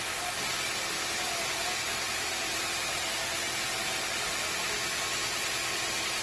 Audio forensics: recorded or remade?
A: recorded